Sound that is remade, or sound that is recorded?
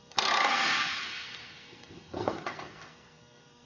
remade